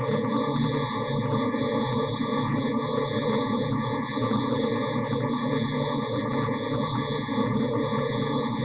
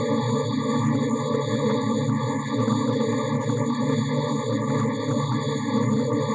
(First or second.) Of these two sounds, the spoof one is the first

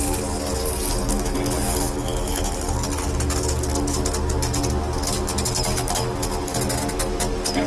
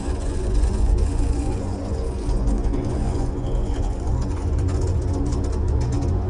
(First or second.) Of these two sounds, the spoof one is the second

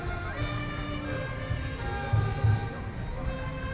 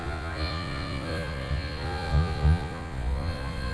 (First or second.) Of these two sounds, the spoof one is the second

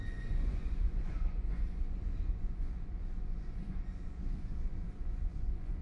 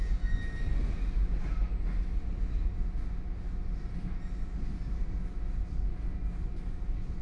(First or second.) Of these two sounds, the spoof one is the first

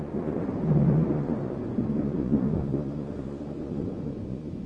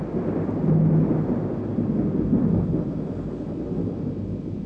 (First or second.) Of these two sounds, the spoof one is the first